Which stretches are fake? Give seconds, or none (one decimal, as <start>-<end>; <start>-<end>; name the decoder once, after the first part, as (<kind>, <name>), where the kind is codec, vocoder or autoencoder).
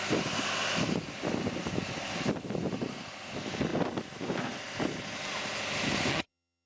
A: 6.1-6.7 (vocoder, HiFi-GAN)